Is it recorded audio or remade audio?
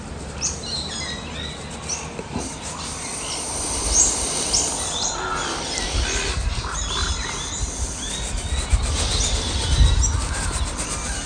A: recorded